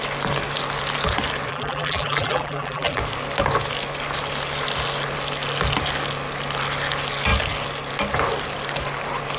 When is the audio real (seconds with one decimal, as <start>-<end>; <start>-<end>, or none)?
0.0-1.5; 3.0-9.4